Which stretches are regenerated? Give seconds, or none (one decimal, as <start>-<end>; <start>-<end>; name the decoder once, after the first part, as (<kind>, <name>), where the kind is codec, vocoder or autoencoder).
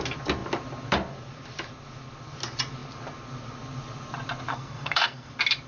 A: 4.5-5.3 (codec, SNAC)